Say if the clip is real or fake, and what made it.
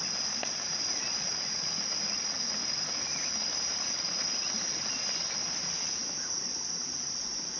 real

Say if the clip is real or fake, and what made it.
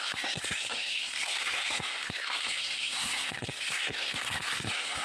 fake, codec, SNAC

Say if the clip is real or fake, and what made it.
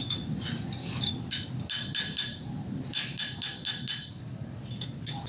real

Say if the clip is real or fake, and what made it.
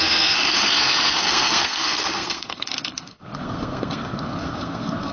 fake, codec, SNAC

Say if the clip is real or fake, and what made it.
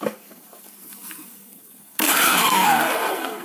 fake, codec, SNAC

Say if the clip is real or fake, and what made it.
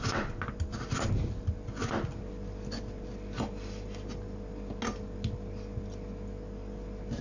real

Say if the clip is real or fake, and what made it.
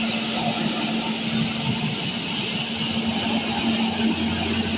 real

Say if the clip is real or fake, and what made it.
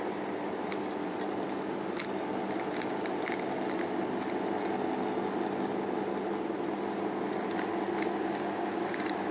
real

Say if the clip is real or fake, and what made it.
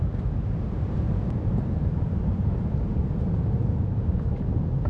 fake, vocoder, BigVGAN v2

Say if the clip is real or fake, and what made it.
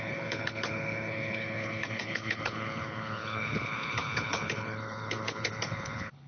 fake, codec, HILCodec